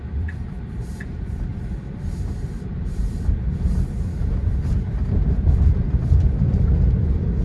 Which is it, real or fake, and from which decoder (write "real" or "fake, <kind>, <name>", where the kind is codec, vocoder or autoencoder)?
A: fake, vocoder, BigVGAN v2